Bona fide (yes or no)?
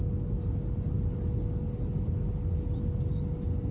yes